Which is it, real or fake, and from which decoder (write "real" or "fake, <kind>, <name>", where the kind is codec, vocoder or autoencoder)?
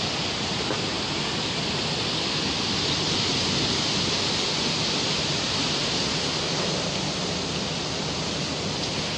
real